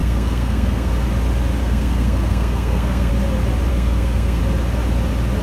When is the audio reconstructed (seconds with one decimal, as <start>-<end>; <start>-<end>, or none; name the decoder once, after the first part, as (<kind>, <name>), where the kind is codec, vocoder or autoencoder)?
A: 0.0-0.9 (codec, SNAC); 1.6-3.1; 3.7-4.4